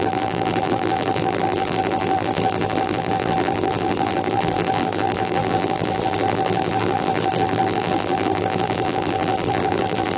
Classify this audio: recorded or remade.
remade